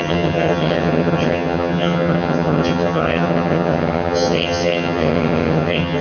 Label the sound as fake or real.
fake